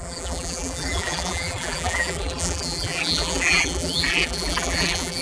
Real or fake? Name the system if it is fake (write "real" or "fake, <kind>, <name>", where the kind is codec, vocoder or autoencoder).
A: fake, vocoder, BigVGAN v2